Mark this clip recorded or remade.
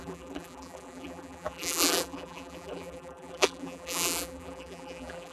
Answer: remade